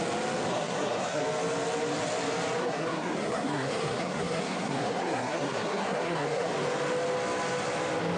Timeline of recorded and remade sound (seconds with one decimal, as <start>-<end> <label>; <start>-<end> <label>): 0.0-0.5 recorded; 0.5-1.2 remade; 1.2-2.6 recorded; 2.6-6.5 remade; 6.5-8.2 recorded